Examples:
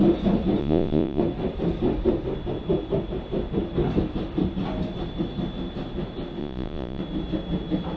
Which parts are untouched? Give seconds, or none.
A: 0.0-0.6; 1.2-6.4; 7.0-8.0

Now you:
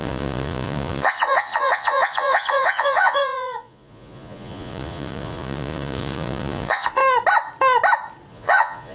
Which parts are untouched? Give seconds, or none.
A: 7.0-8.3

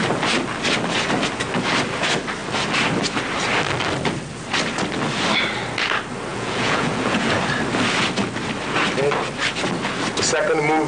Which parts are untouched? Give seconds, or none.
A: 0.0-6.3; 7.3-10.9

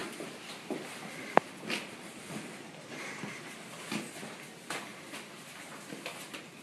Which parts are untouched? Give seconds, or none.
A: 0.0-6.6

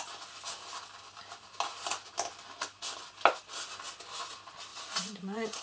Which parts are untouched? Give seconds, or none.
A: 0.0-4.7

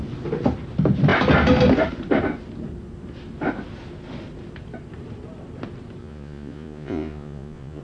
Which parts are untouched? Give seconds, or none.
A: 0.0-6.0

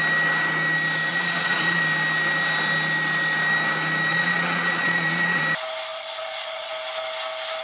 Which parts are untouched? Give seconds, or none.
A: 0.0-1.1; 1.8-4.1; 5.4-5.9; 6.7-7.6